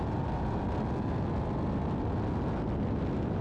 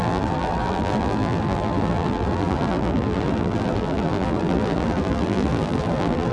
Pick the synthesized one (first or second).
second